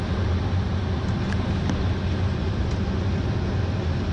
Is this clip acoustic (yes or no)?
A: yes